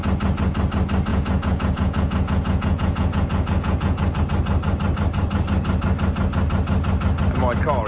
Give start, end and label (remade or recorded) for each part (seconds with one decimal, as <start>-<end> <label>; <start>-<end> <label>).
0.0-1.1 recorded; 1.1-4.2 remade; 4.2-7.9 recorded